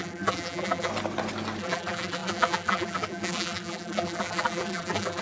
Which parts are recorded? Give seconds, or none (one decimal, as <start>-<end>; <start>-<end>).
0.9-1.6